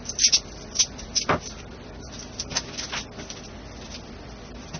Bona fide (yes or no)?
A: yes